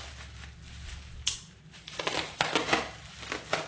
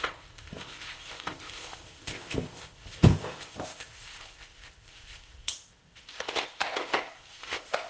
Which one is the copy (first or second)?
second